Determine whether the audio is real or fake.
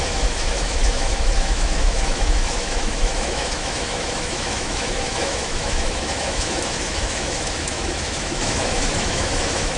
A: fake